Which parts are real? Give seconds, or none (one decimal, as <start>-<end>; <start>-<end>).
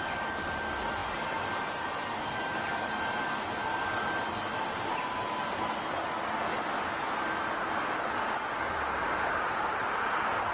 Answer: 0.0-10.5